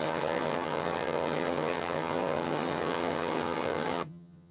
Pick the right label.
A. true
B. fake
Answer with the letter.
B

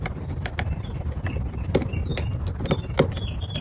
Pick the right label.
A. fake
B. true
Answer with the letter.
B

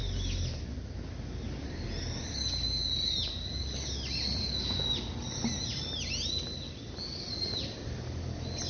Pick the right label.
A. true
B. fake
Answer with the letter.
A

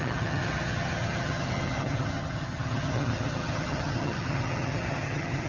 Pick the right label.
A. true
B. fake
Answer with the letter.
B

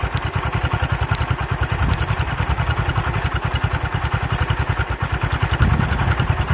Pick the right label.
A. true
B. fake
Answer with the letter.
A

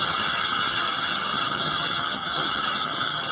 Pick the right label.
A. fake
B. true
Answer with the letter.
A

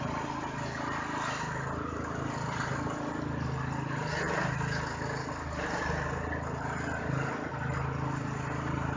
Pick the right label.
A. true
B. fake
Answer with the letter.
A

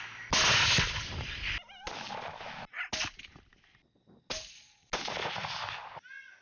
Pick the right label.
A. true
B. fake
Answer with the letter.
A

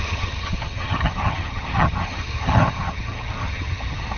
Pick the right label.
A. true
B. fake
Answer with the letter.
B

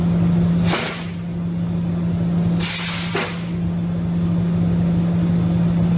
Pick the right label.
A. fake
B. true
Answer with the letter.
B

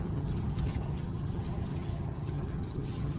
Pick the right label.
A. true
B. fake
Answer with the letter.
B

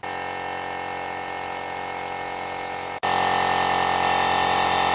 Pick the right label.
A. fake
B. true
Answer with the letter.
B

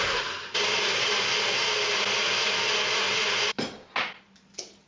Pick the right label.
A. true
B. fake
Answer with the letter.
A